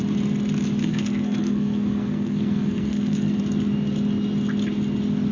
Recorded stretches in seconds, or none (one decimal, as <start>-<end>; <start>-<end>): 0.0-0.8; 3.4-5.3